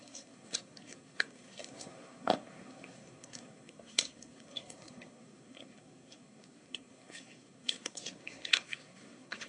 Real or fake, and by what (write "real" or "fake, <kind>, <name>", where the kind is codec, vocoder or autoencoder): fake, codec, SNAC